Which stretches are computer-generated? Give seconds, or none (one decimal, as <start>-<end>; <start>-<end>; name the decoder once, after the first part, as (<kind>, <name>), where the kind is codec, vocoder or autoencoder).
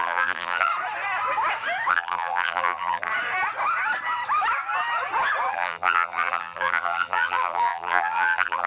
0.0-0.7 (vocoder, BigVGAN v2); 1.9-3.1; 5.5-8.7